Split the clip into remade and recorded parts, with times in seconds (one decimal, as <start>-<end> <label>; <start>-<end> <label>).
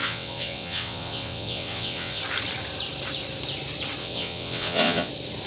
0.0-2.2 remade; 2.2-4.0 recorded; 4.0-5.1 remade; 5.1-5.5 recorded